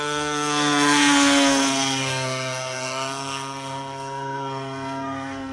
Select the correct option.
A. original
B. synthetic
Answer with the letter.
B